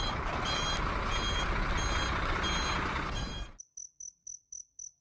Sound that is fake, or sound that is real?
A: real